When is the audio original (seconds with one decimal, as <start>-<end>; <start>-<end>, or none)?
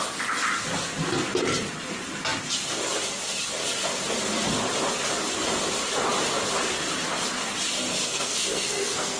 0.0-8.0